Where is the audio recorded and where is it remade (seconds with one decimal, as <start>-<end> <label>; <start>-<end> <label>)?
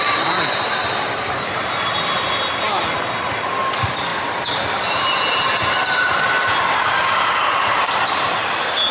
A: 0.0-4.1 recorded; 4.1-4.7 remade; 4.7-8.9 recorded